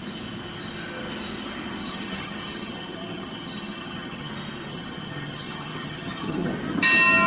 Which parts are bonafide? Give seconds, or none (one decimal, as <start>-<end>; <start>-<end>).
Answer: 0.0-1.8; 4.3-4.7; 6.5-7.3